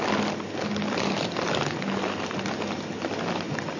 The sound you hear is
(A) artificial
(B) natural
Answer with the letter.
B